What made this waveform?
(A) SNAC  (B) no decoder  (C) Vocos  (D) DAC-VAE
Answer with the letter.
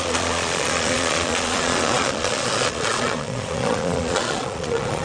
C